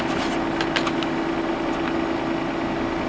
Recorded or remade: recorded